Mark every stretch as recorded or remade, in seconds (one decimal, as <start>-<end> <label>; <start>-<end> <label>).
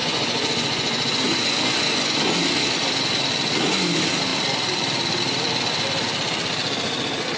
0.0-2.4 remade; 2.4-7.4 recorded